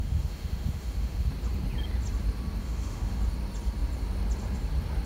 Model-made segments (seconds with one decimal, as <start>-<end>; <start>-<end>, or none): 0.0-1.3; 2.6-3.2